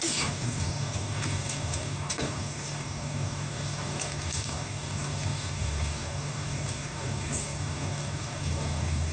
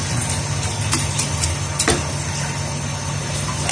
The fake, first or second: first